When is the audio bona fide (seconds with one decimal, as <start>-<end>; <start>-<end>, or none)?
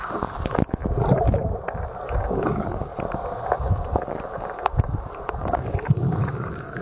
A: 0.8-2.1; 2.9-3.5